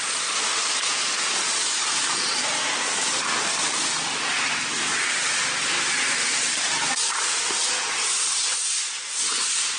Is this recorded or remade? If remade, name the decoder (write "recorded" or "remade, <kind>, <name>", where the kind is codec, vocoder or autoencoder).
recorded